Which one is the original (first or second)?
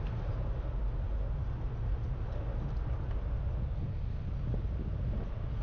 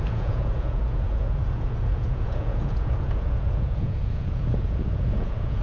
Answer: first